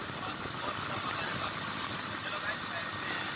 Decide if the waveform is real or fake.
real